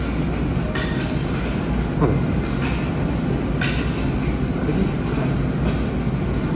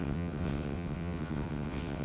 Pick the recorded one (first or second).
first